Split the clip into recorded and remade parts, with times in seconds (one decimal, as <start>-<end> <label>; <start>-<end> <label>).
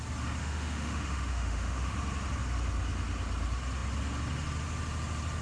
0.0-0.4 recorded; 0.4-1.9 remade; 1.9-5.4 recorded